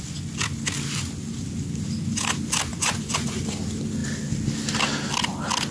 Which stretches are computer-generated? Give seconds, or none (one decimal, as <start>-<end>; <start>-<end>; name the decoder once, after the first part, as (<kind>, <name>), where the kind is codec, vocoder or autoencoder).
2.7-3.4 (vocoder, Vocos)